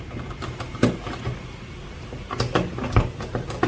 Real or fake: real